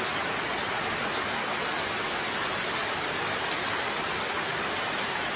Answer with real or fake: real